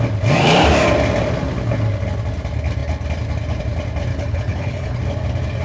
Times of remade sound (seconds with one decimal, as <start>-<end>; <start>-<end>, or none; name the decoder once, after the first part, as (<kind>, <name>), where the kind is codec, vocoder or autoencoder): 4.1-5.0 (codec, HILCodec)